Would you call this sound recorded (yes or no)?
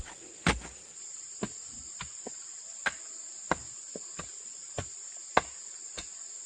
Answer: yes